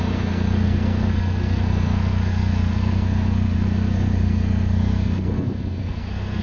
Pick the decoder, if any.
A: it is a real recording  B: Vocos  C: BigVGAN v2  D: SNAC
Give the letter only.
D